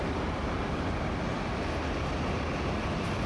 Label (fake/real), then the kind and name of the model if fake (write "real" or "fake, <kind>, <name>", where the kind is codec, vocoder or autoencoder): real